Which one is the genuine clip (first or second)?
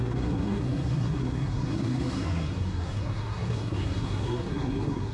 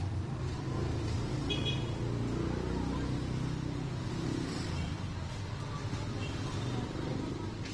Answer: second